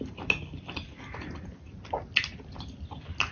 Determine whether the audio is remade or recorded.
recorded